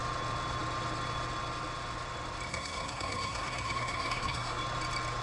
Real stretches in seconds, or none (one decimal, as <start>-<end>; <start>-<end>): 0.0-2.5; 4.6-5.2